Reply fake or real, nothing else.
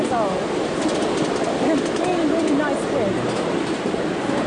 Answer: real